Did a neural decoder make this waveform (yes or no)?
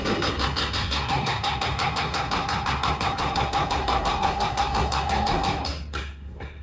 yes